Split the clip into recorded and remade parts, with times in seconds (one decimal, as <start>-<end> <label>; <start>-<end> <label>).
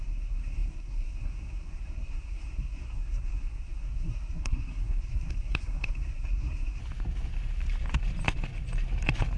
0.0-6.8 remade; 6.8-9.4 recorded